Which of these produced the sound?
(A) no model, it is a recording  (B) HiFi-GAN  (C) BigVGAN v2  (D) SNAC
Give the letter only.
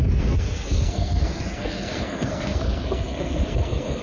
D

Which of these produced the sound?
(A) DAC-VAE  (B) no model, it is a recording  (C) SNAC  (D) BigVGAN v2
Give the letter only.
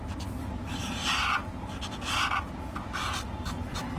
B